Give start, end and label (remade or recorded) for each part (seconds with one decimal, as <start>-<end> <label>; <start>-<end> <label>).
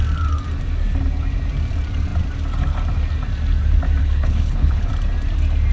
0.0-4.0 recorded; 4.0-4.9 remade; 4.9-5.7 recorded